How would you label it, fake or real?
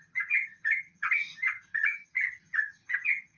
fake